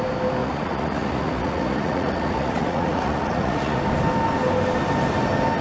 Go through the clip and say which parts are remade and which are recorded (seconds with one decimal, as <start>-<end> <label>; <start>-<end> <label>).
0.0-0.4 recorded; 0.4-3.8 remade; 3.8-5.6 recorded